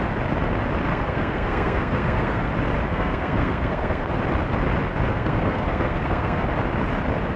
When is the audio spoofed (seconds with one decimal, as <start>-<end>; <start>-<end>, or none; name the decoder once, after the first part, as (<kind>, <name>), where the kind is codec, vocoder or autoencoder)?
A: 0.9-2.5 (codec, SNAC); 2.9-4.2; 5.1-6.4